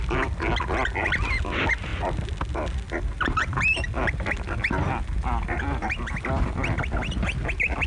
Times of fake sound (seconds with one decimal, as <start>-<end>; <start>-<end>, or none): none